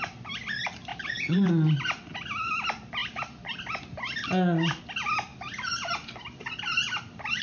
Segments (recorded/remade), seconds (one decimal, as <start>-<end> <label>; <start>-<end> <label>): 0.0-0.9 recorded; 0.9-1.5 remade; 1.5-7.4 recorded